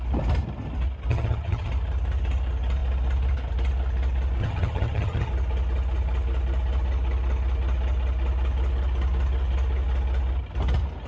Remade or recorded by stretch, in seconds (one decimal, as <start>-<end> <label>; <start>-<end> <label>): 0.0-1.1 recorded; 1.1-1.7 remade; 1.7-4.4 recorded; 4.4-5.3 remade; 5.3-11.1 recorded